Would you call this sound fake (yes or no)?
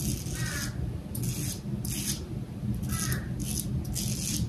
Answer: no